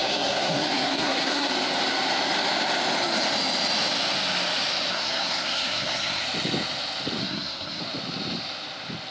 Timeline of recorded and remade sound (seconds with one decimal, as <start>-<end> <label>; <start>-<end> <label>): 0.0-1.5 remade; 1.5-4.9 recorded; 4.9-6.2 remade; 6.2-7.2 recorded; 7.2-7.8 remade; 7.8-9.1 recorded